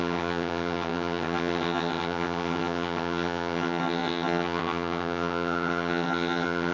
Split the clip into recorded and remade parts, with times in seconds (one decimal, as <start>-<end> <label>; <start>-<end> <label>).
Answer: 0.0-6.7 remade